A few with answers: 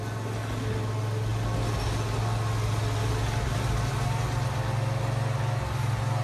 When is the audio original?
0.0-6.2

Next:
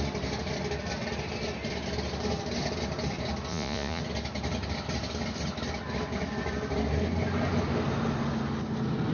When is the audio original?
0.0-3.5; 4.0-9.1